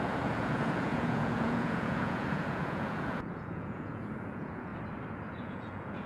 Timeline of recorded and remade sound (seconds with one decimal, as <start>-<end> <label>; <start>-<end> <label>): 0.0-4.7 remade; 4.7-5.3 recorded; 5.3-6.1 remade